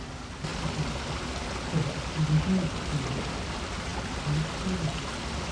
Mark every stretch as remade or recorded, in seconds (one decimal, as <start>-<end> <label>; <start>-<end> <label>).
0.0-5.5 recorded